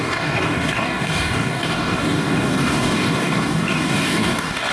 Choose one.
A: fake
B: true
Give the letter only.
A